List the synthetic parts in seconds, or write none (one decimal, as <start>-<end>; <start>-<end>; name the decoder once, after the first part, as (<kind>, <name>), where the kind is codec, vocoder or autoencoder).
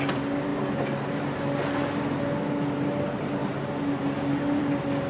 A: none